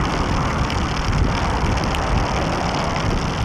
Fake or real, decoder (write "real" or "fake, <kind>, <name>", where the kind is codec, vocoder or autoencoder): real